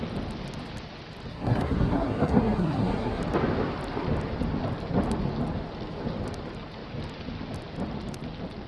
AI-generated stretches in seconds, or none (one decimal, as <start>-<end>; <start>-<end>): 1.3-3.2